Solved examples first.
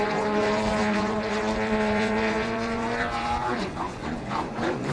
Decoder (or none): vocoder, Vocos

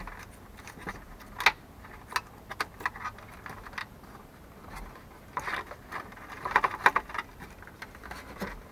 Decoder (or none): none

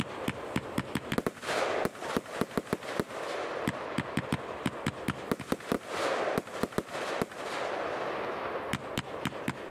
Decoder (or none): none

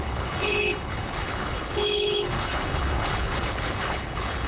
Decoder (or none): codec, HILCodec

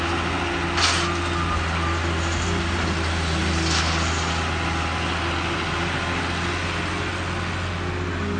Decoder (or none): none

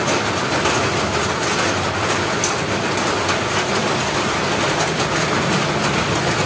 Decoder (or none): none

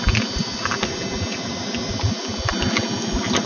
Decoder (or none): none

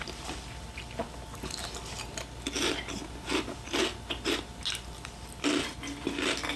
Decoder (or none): none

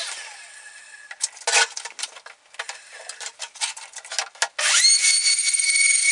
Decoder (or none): none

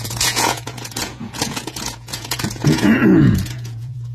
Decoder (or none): vocoder, Vocos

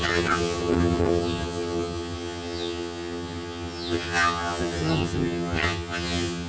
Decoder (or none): vocoder, HiFi-GAN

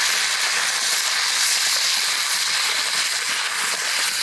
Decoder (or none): none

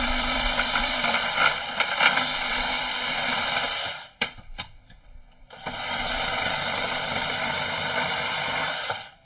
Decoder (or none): vocoder, BigVGAN v2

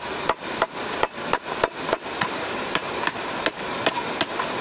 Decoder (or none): vocoder, BigVGAN v2